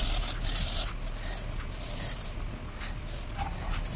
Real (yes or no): yes